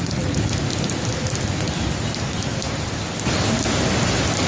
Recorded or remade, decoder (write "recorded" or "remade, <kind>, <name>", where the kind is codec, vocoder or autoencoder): recorded